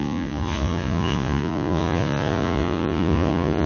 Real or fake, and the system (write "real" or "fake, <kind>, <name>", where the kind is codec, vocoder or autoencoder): fake, vocoder, Vocos